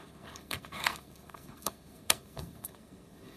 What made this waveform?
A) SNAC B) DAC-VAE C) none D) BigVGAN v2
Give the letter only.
A